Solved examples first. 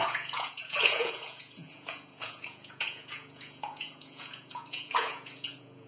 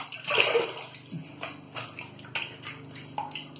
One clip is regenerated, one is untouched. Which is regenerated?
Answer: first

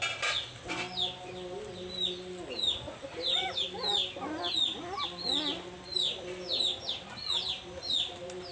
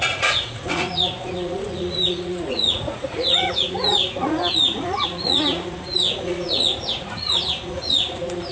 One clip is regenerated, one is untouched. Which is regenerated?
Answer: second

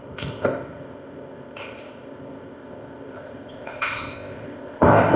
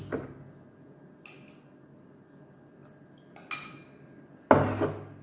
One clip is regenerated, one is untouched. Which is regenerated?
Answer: first